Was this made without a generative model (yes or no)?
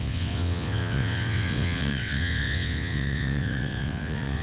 no